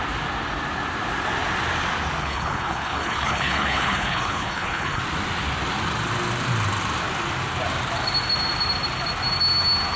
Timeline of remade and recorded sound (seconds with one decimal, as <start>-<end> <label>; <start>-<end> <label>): 0.0-2.2 recorded; 2.2-5.0 remade; 5.0-10.0 recorded